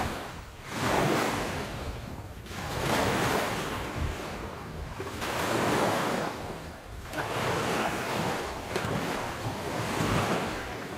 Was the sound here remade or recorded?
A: remade